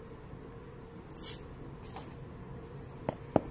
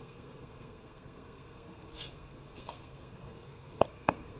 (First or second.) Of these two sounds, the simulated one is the second